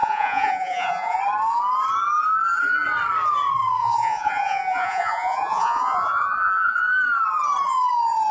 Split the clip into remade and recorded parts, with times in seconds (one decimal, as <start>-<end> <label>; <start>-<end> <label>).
0.0-1.2 remade; 1.2-3.8 recorded; 3.8-6.8 remade; 6.8-8.3 recorded

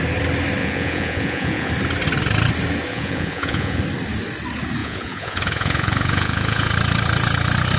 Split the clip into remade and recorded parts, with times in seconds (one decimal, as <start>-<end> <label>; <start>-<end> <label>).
0.0-0.6 recorded; 0.6-1.7 remade; 1.7-2.9 recorded; 2.9-3.8 remade; 3.8-4.8 recorded; 4.8-6.7 remade; 6.7-7.8 recorded

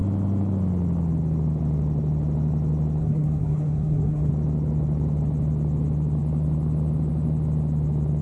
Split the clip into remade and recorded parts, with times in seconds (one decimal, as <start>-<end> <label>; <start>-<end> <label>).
0.0-3.0 recorded; 3.0-4.3 remade; 4.3-8.2 recorded

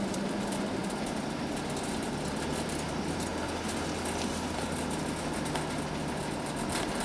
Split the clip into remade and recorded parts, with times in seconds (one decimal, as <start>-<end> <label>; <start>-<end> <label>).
0.0-3.3 remade; 3.3-6.0 recorded; 6.0-7.0 remade

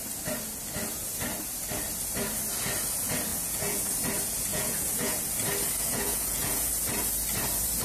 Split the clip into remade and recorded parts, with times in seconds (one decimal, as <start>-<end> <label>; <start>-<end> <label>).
0.0-3.3 recorded; 3.3-3.8 remade; 3.8-4.5 recorded; 4.5-5.2 remade; 5.2-5.8 recorded; 5.8-6.7 remade; 6.7-7.8 recorded

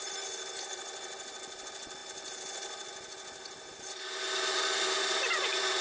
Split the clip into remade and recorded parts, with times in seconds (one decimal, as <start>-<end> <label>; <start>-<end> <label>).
0.0-5.8 recorded

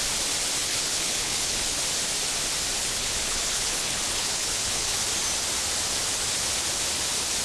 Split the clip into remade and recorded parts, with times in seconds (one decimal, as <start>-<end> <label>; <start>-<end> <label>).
0.0-0.6 recorded; 0.6-1.8 remade; 1.8-2.8 recorded; 2.8-5.0 remade; 5.0-7.4 recorded